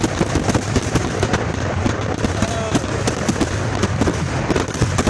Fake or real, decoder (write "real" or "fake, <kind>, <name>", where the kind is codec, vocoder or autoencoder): real